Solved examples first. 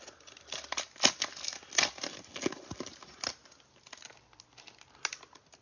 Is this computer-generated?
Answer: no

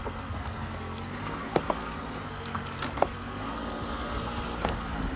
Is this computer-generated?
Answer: yes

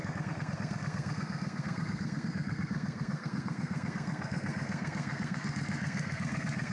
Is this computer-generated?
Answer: yes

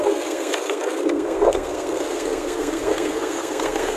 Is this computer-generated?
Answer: yes